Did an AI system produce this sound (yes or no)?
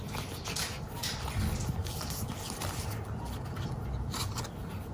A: no